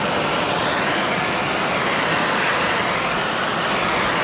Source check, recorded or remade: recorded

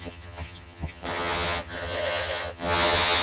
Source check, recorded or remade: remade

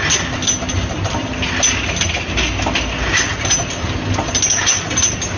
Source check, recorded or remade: recorded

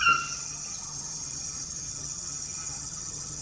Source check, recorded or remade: remade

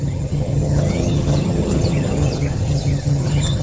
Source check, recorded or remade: remade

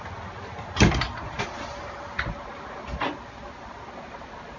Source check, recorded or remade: recorded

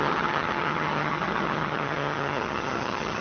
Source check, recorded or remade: remade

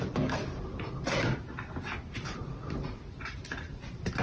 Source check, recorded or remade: recorded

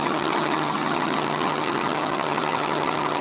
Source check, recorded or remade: remade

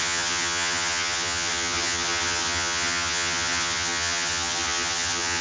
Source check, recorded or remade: remade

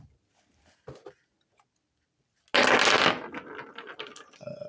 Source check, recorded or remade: recorded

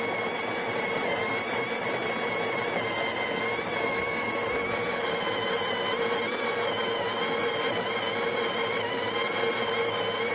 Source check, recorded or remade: recorded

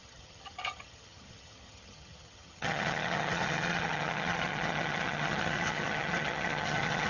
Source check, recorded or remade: remade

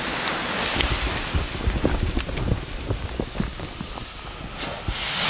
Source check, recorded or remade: recorded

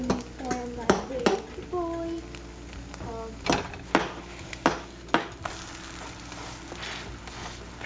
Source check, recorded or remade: recorded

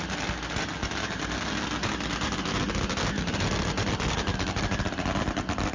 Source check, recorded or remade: recorded